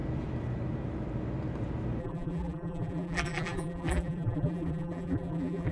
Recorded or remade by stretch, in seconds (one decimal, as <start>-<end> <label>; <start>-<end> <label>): 0.0-2.0 recorded; 2.0-5.7 remade